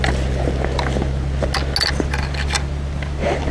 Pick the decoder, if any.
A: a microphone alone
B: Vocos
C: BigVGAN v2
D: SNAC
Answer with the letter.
A